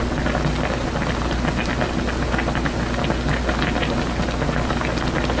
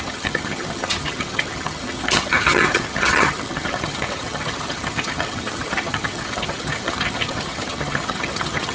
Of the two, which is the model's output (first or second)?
second